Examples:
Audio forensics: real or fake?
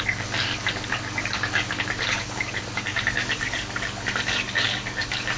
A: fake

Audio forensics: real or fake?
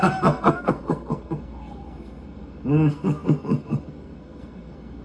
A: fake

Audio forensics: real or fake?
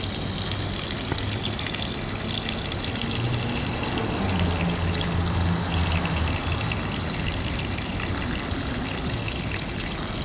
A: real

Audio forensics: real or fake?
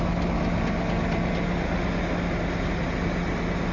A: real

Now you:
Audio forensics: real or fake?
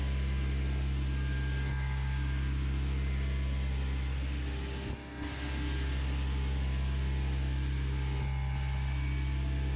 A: real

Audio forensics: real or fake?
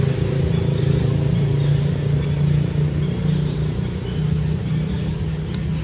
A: real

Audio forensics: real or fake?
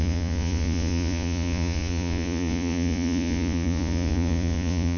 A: fake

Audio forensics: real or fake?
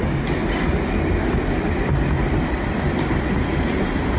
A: real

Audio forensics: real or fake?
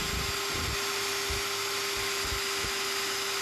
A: real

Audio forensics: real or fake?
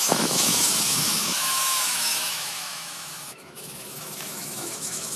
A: fake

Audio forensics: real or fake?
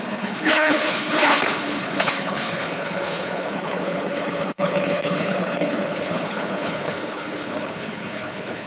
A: fake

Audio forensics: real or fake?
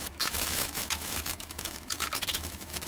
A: fake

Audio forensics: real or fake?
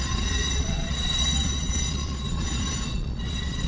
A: fake